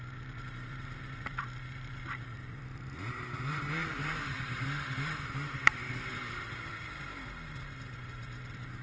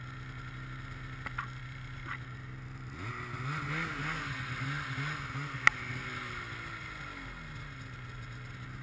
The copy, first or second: first